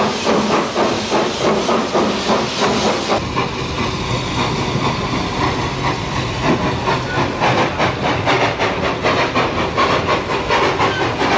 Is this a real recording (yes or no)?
yes